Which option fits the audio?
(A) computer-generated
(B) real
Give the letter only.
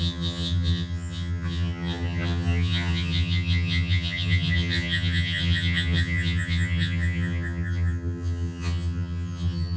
A